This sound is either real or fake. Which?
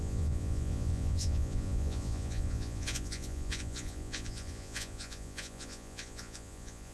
fake